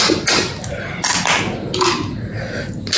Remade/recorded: recorded